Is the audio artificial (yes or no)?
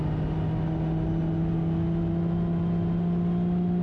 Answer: no